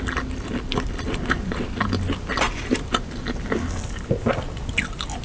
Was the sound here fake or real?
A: real